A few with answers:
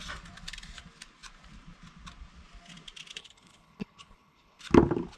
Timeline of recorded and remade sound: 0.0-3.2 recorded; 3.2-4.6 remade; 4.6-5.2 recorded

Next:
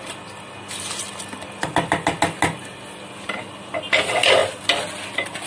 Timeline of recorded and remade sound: 0.0-5.5 recorded